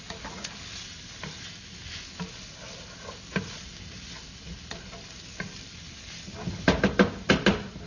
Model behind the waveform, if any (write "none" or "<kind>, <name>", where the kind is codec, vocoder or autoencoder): none